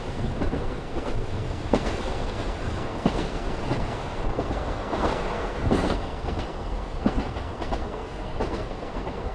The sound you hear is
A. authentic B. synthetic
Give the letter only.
B